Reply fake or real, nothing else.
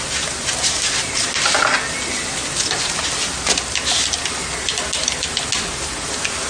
real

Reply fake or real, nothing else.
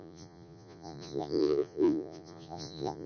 fake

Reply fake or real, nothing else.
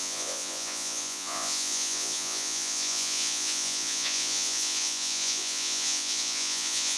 fake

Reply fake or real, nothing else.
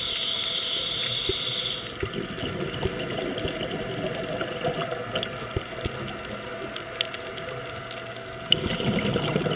real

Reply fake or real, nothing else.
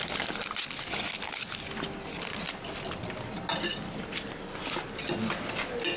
real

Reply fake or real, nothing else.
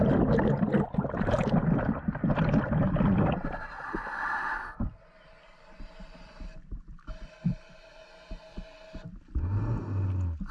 real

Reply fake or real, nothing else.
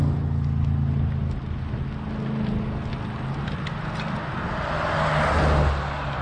real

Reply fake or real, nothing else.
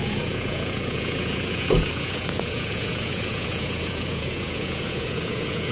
fake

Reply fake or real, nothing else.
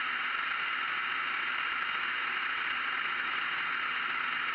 real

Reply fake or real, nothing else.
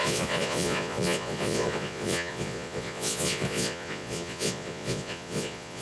fake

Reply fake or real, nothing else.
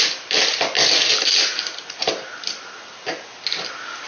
real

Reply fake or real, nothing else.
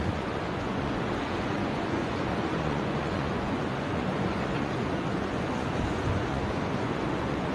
fake